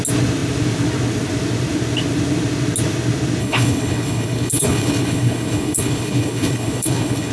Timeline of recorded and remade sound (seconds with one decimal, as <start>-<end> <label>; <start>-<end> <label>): 0.0-3.4 recorded; 3.4-7.3 remade